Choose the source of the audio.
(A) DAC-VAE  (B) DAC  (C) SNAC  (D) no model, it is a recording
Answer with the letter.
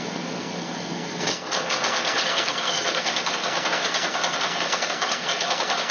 C